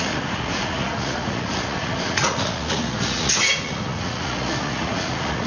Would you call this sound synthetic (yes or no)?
yes